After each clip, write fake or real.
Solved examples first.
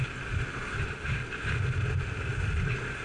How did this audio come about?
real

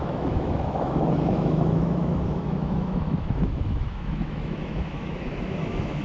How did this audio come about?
fake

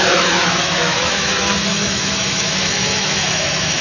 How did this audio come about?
fake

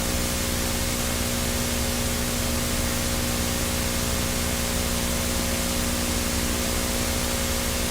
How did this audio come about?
real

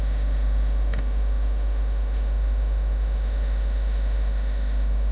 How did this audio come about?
fake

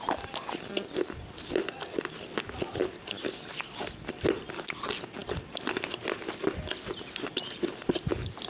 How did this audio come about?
real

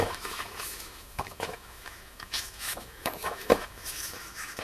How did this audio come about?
fake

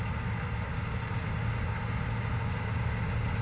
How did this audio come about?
real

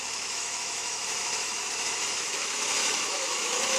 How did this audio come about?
fake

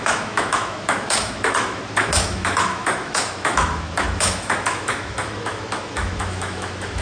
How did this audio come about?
fake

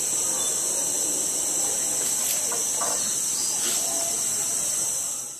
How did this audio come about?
real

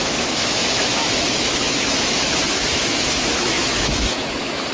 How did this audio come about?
fake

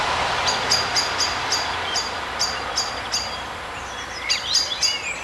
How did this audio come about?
real